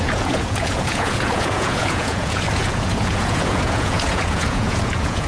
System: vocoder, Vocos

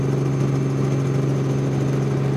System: none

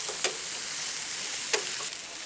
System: none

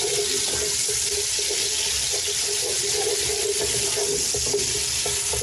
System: none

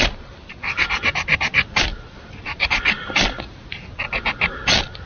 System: none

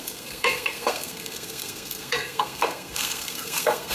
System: codec, SNAC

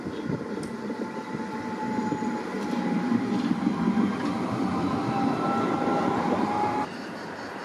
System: none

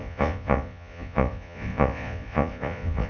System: vocoder, Vocos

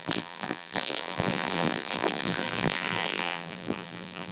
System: vocoder, BigVGAN v2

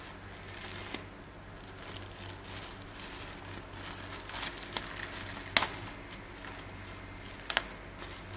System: none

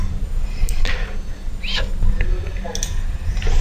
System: none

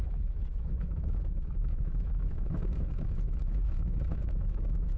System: autoencoder, DAC-VAE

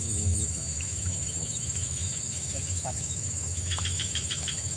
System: autoencoder, DAC-VAE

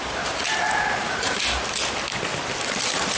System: none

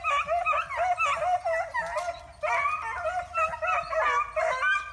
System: none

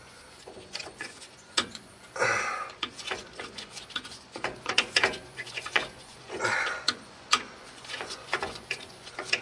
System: vocoder, Vocos